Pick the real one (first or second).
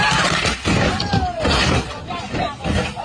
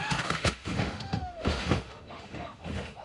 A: first